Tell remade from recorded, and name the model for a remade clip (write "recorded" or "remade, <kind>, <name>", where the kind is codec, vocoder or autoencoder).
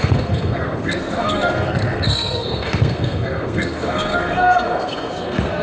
remade, codec, SNAC